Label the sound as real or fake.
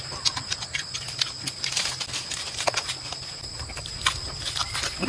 real